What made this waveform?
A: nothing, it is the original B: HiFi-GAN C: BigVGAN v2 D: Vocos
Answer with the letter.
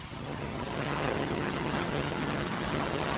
B